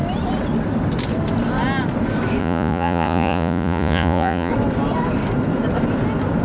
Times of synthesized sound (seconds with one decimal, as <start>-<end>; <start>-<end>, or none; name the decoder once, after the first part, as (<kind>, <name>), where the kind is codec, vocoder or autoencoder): 2.4-4.5 (vocoder, Vocos)